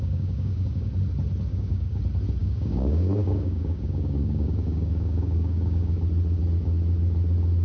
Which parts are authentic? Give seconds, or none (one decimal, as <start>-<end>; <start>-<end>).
0.9-1.5; 2.0-2.4; 6.0-7.6